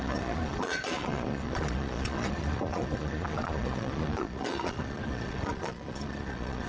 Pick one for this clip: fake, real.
fake